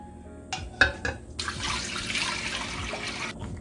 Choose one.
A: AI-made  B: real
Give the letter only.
B